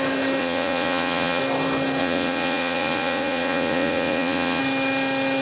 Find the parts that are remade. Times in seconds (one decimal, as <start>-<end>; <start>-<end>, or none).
0.4-1.4; 2.0-4.6